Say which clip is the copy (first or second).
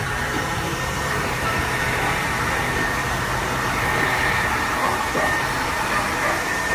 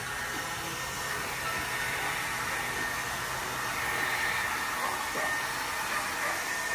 first